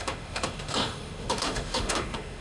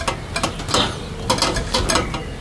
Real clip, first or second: second